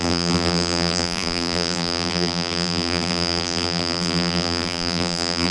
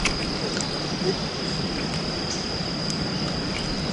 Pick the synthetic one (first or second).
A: first